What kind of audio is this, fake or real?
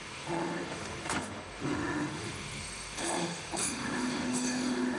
fake